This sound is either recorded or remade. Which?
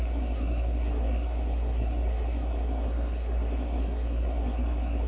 remade